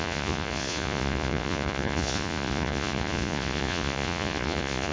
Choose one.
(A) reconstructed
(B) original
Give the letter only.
A